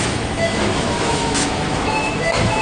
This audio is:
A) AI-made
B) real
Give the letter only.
A